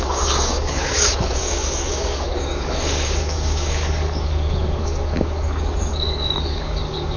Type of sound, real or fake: fake